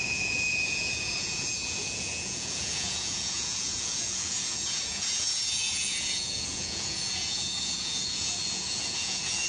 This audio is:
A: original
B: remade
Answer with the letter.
B